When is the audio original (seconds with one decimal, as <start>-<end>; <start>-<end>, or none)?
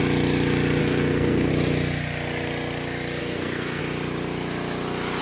0.0-0.8; 1.5-3.2; 3.8-5.2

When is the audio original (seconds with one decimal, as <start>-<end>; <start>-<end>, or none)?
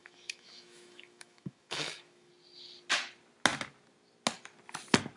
2.3-5.2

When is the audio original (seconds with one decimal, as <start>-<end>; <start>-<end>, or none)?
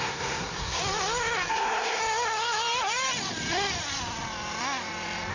0.8-1.5; 2.0-5.3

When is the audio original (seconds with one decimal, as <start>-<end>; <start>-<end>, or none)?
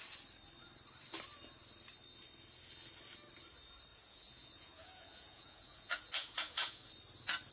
0.0-3.9; 6.9-7.5